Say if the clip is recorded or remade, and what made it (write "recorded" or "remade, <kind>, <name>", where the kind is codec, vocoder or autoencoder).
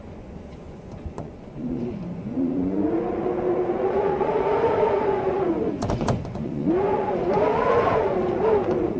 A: remade, vocoder, Vocos